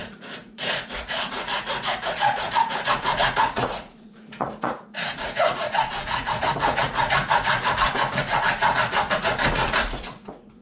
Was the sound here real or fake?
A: fake